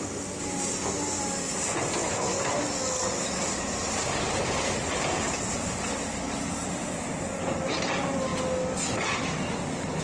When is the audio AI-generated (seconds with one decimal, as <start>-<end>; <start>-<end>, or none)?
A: none

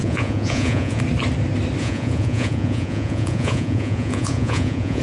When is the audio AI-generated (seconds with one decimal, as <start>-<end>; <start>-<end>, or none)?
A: 0.0-1.0; 1.8-5.0

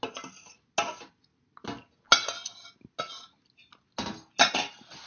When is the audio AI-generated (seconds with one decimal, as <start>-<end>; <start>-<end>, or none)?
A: none

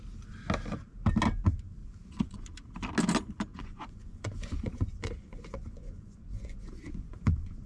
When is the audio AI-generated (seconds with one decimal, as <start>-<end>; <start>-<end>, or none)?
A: 1.8-2.5; 3.5-7.3

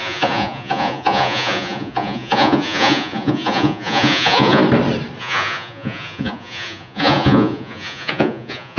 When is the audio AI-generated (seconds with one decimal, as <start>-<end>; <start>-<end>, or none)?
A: 0.0-4.6; 5.2-8.8

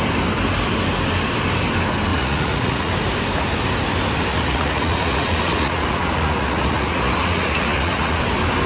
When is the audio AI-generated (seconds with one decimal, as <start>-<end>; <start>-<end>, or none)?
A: 2.1-2.9; 4.3-8.2

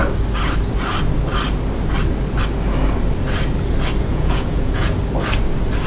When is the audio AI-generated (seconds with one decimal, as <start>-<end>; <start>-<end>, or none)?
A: 4.1-5.0

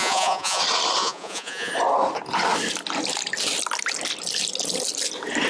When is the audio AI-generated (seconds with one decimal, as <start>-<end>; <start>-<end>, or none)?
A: 0.0-0.6; 1.0-1.7